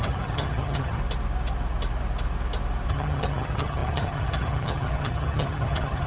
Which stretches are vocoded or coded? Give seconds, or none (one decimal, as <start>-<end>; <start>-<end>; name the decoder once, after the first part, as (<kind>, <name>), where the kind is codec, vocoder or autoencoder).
0.0-1.0 (vocoder, HiFi-GAN); 2.9-6.1